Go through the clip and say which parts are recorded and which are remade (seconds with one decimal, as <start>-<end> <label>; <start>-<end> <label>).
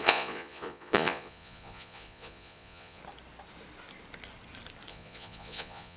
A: 0.0-3.0 remade; 3.0-4.9 recorded; 4.9-6.0 remade